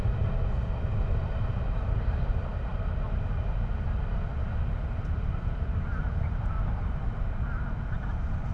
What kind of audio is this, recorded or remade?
recorded